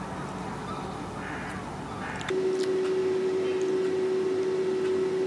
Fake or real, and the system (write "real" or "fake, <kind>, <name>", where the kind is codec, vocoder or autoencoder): real